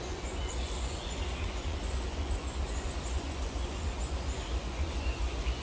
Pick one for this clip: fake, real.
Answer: fake